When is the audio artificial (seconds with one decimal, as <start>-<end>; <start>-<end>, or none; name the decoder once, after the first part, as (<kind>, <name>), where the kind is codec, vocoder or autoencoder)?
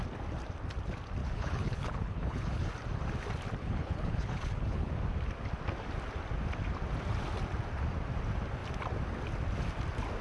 1.2-2.7 (codec, HILCodec); 3.6-4.9